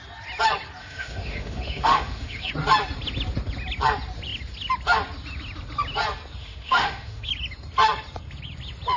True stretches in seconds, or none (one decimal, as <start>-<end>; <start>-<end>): 0.0-0.8; 2.5-6.4; 7.3-9.0